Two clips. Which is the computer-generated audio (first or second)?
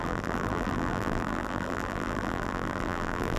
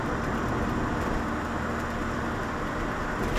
first